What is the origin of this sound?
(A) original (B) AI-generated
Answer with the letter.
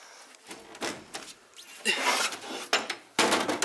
A